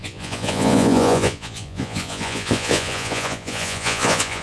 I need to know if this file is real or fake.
fake